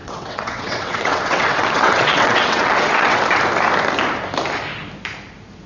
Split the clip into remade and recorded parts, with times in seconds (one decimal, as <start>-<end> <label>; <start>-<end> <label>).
0.0-3.4 remade; 3.4-5.7 recorded

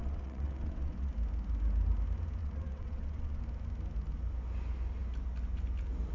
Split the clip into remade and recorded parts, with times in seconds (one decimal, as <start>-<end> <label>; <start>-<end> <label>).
0.0-1.1 remade; 1.1-2.4 recorded; 2.4-3.4 remade; 3.4-6.1 recorded

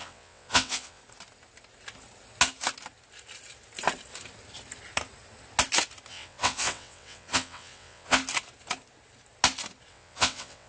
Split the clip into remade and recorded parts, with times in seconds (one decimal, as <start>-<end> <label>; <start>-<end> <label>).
0.0-1.0 remade; 1.0-6.1 recorded; 6.1-8.2 remade; 8.2-9.9 recorded; 9.9-10.7 remade

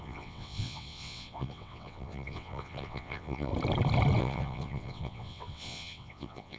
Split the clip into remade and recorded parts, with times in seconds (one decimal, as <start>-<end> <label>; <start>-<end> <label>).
0.0-3.5 remade; 3.5-4.2 recorded; 4.2-6.6 remade

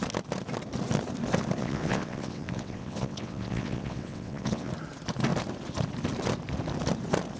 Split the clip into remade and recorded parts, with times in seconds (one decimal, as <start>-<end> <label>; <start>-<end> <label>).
0.0-1.6 recorded; 1.6-4.7 remade; 4.7-7.4 recorded